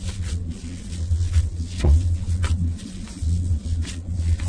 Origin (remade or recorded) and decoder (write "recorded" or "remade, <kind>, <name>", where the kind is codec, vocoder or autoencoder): remade, vocoder, Vocos